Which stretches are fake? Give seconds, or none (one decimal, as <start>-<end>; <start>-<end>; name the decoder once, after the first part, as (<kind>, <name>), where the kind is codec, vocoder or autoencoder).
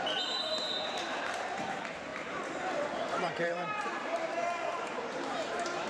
0.0-5.9 (vocoder, BigVGAN v2)